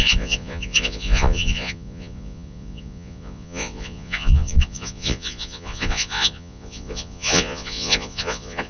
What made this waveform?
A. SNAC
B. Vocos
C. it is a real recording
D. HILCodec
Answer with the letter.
B